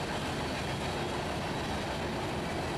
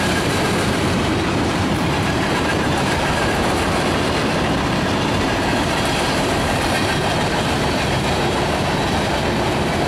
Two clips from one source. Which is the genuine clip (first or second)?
first